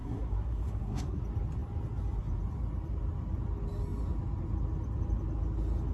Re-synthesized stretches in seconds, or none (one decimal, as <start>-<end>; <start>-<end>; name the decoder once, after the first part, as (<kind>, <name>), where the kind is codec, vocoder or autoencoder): 0.0-1.2 (codec, SNAC)

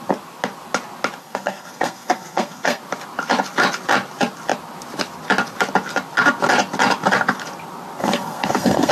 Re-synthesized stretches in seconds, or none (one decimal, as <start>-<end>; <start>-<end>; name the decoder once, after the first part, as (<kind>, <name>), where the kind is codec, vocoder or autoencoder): 1.2-2.8 (codec, SNAC); 8.0-8.9

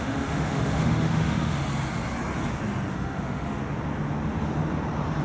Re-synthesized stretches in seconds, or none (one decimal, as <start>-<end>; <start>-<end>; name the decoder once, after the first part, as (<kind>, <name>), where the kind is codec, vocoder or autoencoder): 0.0-1.6 (autoencoder, DAC-VAE); 2.9-3.6

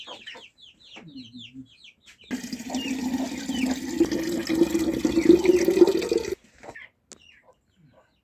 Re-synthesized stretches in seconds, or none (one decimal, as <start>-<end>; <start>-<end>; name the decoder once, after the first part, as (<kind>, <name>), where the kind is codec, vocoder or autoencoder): none

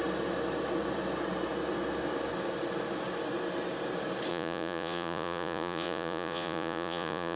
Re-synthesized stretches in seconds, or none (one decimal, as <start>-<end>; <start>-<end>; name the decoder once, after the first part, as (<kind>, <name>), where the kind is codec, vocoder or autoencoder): 4.3-7.4 (vocoder, Vocos)

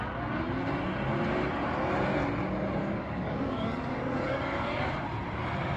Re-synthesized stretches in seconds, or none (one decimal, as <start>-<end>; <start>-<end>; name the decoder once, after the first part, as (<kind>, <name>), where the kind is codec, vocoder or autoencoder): 2.8-4.9 (codec, DAC)